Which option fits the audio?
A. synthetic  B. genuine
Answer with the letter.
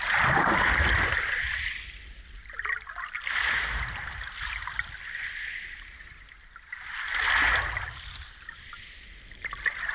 B